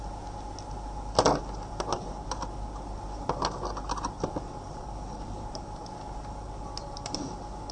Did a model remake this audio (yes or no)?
no